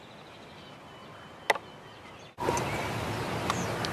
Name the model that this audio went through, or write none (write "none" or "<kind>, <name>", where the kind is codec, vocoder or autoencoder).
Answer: none